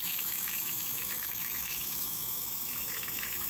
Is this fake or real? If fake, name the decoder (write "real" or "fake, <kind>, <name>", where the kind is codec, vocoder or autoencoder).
fake, autoencoder, DAC-VAE